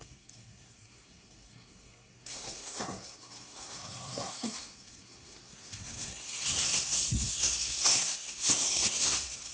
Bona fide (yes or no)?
no